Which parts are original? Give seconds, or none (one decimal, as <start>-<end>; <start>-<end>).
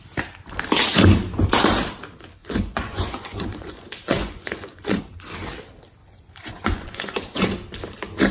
0.0-2.4; 5.0-6.0; 7.4-8.3